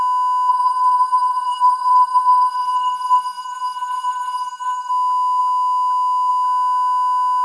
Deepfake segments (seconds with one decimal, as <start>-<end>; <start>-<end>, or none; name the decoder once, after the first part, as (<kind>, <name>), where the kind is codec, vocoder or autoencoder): 0.5-4.9 (codec, SNAC)